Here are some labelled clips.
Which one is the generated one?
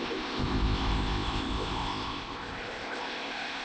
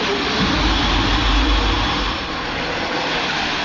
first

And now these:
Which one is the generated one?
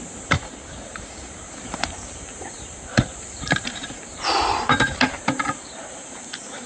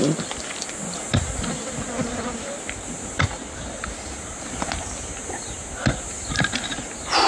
first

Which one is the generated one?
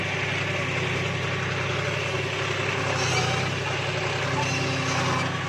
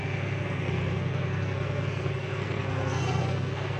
second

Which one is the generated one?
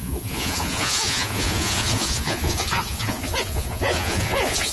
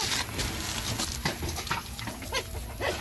first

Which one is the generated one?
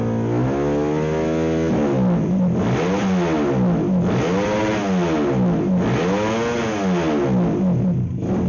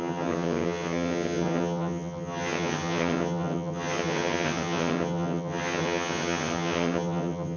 second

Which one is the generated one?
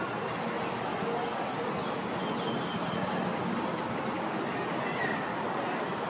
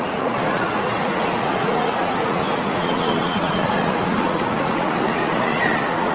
second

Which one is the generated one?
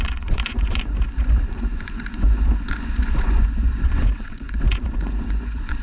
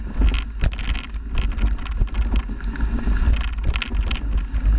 first